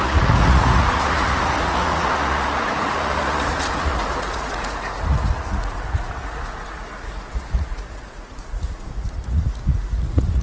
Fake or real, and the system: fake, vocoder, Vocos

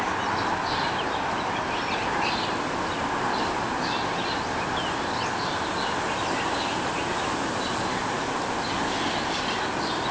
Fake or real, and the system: real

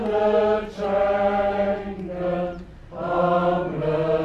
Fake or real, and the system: real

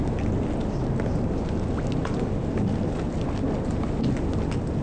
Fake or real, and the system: real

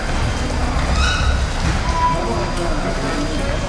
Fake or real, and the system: real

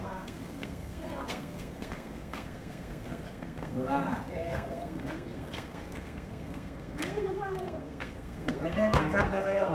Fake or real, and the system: fake, codec, SNAC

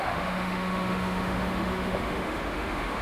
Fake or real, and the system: fake, autoencoder, DAC-VAE